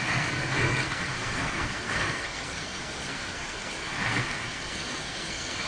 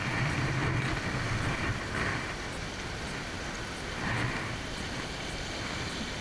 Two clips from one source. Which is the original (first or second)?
second